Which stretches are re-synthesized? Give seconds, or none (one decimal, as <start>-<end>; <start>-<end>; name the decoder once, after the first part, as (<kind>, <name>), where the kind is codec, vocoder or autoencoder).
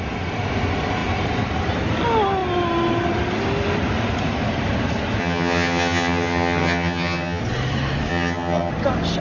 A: 5.2-7.4 (vocoder, HiFi-GAN); 8.1-8.7